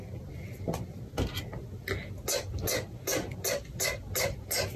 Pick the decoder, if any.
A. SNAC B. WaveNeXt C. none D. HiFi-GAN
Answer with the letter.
C